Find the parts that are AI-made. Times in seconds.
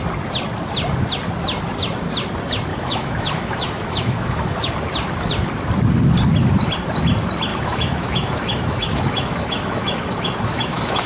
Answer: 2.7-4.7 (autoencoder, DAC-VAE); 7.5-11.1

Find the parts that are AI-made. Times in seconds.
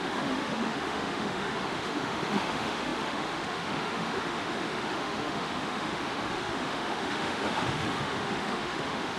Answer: 0.0-9.2 (autoencoder, DAC-VAE)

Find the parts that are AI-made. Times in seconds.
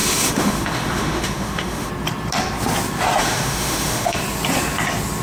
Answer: 0.0-1.9 (autoencoder, DAC-VAE); 3.2-4.2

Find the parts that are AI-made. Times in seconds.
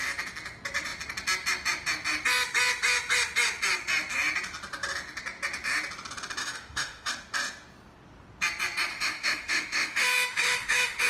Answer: 6.4-7.1 (autoencoder, DAC-VAE); 8.9-11.1